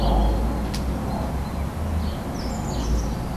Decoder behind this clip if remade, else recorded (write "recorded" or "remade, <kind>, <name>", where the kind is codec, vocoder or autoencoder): recorded